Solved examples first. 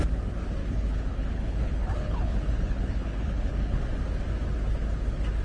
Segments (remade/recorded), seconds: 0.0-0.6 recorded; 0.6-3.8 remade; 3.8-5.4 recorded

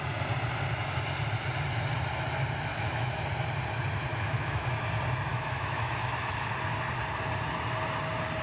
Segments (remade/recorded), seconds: 0.0-2.7 recorded; 2.7-3.2 remade; 3.2-4.1 recorded; 4.1-4.8 remade; 4.8-5.3 recorded; 5.3-6.5 remade; 6.5-8.4 recorded

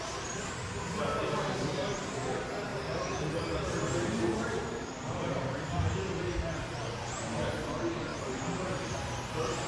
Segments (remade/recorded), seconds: 0.0-2.7 recorded; 2.7-5.9 remade; 5.9-8.1 recorded; 8.1-9.7 remade

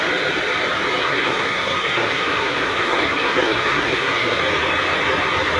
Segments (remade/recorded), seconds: 0.0-1.0 recorded; 1.0-4.4 remade; 4.4-5.6 recorded

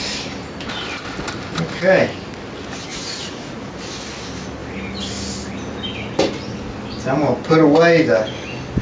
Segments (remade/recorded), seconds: 0.0-2.9 recorded; 2.9-3.6 remade; 3.6-8.8 recorded

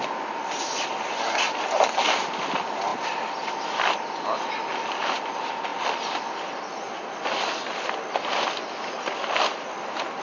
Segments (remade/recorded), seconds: 0.0-10.2 recorded

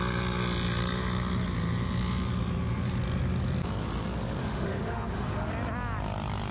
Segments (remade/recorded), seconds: 0.0-4.4 recorded; 4.4-5.5 remade; 5.5-6.5 recorded